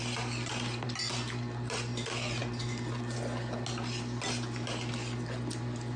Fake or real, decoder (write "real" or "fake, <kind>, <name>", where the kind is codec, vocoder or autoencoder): real